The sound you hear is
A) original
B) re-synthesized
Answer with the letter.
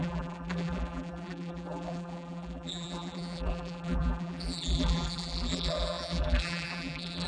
B